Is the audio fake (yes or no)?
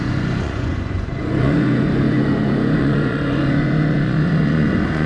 yes